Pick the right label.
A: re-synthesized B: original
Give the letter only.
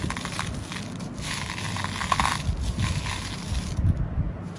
B